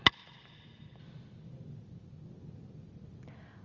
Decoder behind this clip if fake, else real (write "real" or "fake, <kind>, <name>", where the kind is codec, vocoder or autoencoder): real